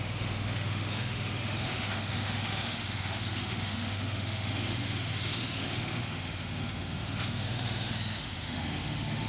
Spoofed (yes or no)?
yes